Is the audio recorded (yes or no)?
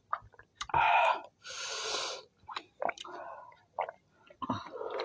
yes